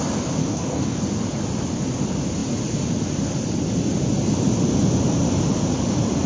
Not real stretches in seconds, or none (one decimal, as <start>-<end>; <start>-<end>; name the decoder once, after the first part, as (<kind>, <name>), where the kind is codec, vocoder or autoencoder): 0.4-1.0 (codec, DAC)